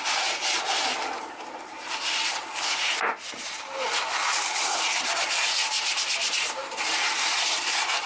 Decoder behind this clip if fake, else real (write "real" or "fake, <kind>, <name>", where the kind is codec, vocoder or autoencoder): real